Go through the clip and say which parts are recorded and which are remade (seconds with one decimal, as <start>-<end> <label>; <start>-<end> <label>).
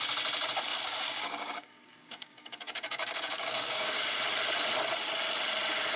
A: 0.0-0.7 recorded; 0.7-4.2 remade; 4.2-6.0 recorded